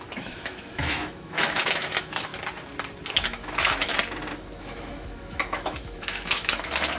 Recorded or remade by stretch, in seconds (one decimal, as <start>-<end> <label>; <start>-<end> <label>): 0.0-2.3 remade; 2.3-3.1 recorded; 3.1-3.9 remade; 3.9-4.6 recorded; 4.6-7.0 remade